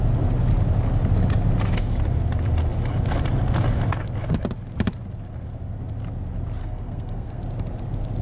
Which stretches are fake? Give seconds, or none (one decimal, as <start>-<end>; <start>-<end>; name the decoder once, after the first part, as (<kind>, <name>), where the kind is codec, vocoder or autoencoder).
6.6-7.4 (codec, SNAC)